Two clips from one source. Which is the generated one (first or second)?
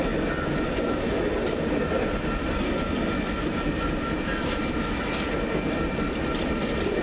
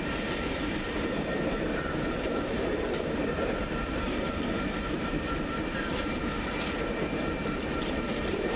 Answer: second